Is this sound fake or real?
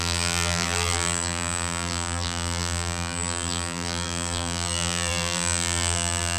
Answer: fake